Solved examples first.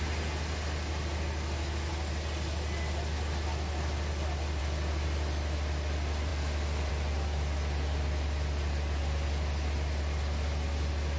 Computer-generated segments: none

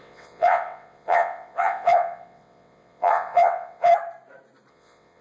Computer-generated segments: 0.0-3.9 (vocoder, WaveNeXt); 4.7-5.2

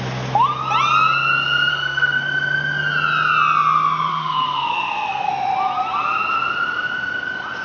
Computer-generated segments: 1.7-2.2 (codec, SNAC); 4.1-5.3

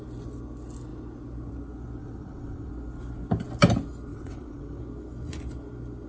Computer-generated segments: 2.0-2.7 (vocoder, WaveNeXt); 4.1-4.8

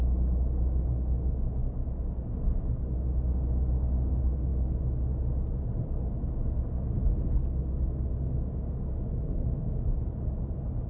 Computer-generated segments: none

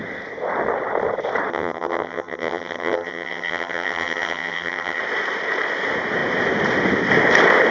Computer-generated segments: 1.5-5.0 (vocoder, HiFi-GAN)